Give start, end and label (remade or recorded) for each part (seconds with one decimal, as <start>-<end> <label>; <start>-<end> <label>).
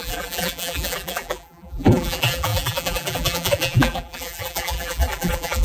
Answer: 0.0-5.6 remade